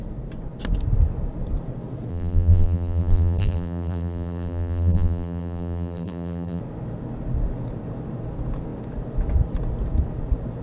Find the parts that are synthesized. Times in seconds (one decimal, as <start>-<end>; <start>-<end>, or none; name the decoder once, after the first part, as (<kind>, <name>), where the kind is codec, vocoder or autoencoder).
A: 2.1-6.6 (vocoder, BigVGAN v2)